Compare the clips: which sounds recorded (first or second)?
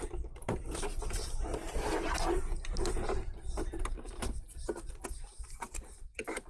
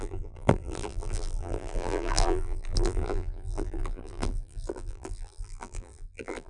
first